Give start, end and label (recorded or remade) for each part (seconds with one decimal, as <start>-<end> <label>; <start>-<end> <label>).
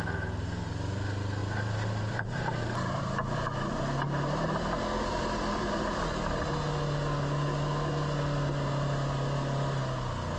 0.0-1.4 recorded; 1.4-6.5 remade; 6.5-10.4 recorded